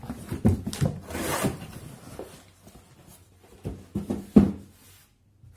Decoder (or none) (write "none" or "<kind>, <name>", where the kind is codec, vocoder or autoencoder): none